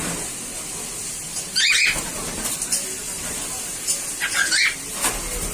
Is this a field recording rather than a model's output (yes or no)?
yes